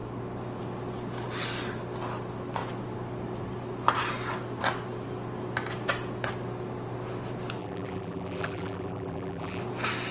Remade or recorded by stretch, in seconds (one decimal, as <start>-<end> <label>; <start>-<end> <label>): 0.0-7.6 recorded; 7.6-9.6 remade; 9.6-10.1 recorded